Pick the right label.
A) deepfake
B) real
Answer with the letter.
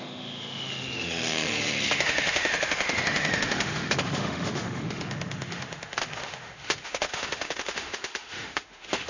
A